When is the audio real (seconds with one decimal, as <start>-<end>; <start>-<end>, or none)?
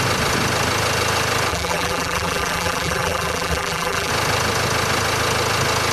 0.0-1.5; 4.1-5.9